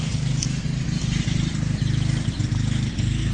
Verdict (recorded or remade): recorded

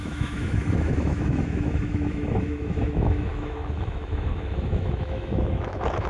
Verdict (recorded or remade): remade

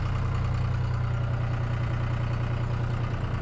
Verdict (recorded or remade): recorded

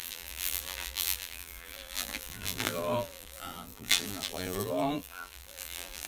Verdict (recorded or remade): remade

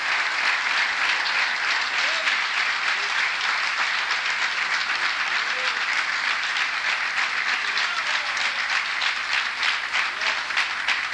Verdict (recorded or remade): recorded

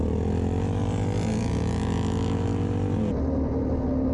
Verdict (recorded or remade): recorded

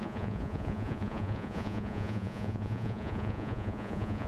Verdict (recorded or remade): remade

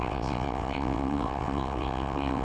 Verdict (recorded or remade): remade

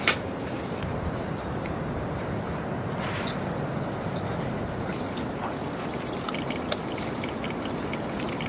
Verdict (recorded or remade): recorded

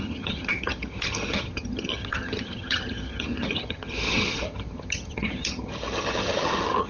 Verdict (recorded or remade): remade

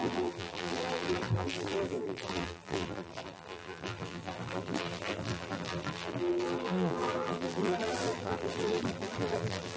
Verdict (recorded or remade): remade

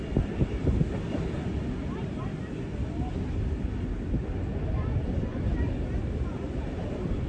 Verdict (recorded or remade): recorded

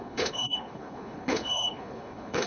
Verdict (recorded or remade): remade